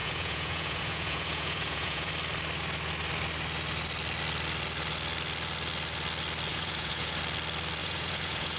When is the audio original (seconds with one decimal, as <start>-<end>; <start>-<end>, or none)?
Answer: 2.1-6.5; 7.2-7.8